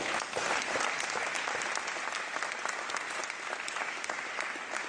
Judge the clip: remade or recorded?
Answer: remade